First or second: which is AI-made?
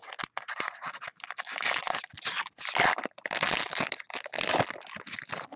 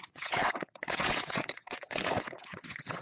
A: second